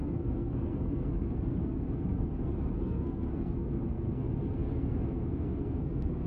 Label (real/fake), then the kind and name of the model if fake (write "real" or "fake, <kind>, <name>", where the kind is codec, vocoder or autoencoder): fake, codec, SNAC